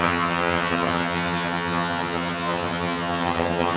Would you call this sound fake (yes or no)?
yes